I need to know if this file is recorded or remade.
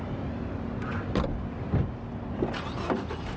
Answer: recorded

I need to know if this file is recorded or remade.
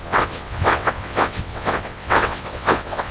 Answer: remade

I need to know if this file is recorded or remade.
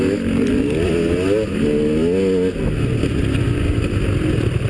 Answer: recorded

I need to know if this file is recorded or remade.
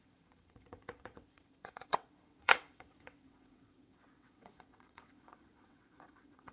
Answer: remade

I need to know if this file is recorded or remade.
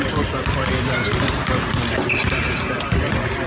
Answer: recorded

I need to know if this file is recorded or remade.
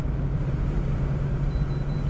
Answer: recorded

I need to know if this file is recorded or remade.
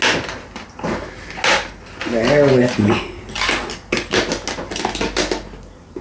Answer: recorded